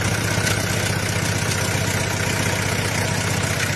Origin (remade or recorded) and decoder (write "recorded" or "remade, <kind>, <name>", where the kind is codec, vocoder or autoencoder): recorded